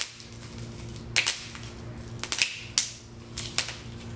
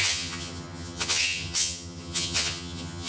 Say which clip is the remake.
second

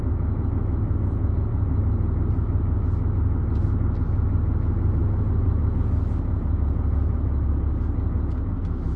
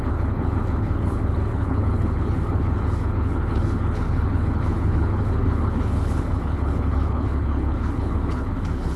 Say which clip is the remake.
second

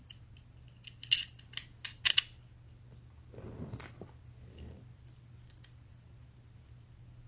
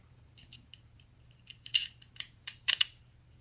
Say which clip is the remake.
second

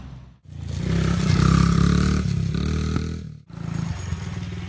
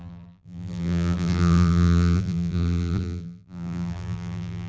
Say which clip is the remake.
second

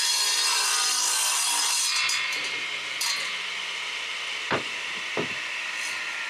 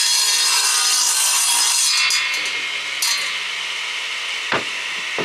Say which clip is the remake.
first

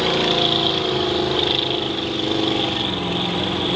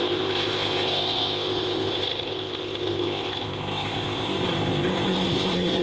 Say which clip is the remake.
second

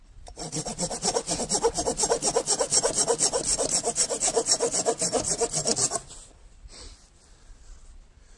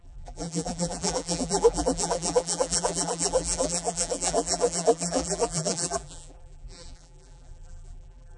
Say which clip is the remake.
second